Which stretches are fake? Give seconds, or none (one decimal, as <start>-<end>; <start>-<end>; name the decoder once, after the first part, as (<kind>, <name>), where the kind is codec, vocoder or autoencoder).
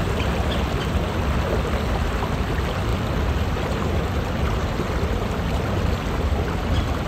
none